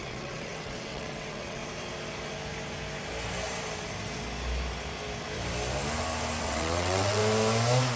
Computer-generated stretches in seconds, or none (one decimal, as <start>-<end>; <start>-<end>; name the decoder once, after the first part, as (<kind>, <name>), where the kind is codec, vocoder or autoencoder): 0.0-1.6 (vocoder, WaveNeXt); 6.4-7.2